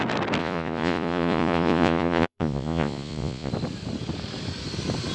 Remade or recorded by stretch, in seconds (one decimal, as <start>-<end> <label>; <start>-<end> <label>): 0.0-0.4 recorded; 0.4-3.5 remade; 3.5-5.1 recorded